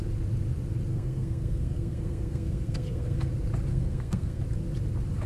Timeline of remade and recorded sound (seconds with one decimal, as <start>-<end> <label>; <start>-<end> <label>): 0.0-0.9 recorded; 0.9-3.3 remade; 3.3-3.7 recorded; 3.7-4.4 remade; 4.4-5.3 recorded